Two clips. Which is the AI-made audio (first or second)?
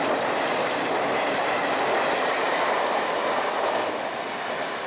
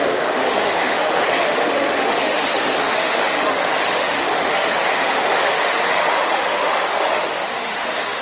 second